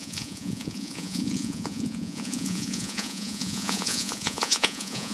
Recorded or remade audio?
remade